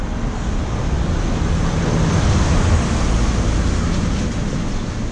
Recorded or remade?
recorded